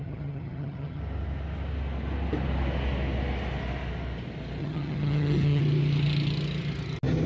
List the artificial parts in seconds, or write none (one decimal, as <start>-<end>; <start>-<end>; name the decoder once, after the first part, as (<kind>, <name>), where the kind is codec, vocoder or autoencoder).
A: 0.0-1.0 (vocoder, HiFi-GAN); 4.6-5.6